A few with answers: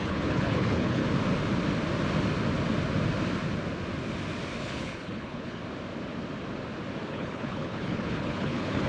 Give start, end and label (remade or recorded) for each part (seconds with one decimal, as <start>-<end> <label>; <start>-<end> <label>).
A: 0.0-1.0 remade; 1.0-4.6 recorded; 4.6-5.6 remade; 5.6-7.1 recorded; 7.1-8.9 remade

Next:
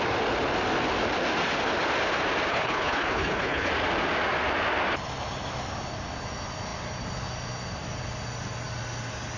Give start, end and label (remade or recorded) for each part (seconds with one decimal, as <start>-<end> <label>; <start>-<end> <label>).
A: 0.0-2.5 recorded; 2.5-3.7 remade; 3.7-9.4 recorded

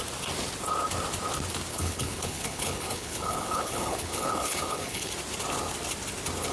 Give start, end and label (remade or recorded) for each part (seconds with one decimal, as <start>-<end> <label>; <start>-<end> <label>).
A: 0.0-1.7 recorded; 1.7-5.1 remade; 5.1-6.5 recorded

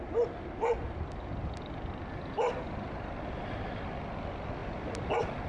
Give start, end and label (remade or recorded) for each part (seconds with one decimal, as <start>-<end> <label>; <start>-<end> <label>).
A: 0.0-5.5 recorded

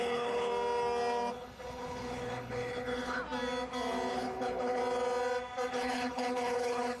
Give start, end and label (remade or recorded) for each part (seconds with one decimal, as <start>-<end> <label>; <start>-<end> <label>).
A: 0.0-0.5 remade; 0.5-1.3 recorded; 1.3-3.2 remade; 3.2-4.1 recorded; 4.1-4.8 remade; 4.8-5.7 recorded; 5.7-7.0 remade

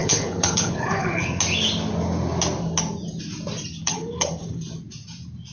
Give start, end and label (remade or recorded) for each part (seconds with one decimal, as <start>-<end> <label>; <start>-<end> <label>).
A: 0.0-1.4 remade; 1.4-3.8 recorded; 3.8-4.6 remade; 4.6-5.5 recorded